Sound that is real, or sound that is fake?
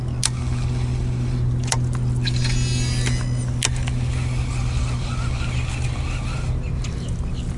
real